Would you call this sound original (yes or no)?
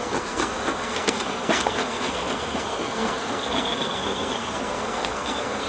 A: no